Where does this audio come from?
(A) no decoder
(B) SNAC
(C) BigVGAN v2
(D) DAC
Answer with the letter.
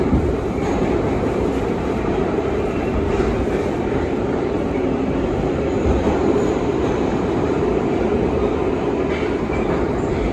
C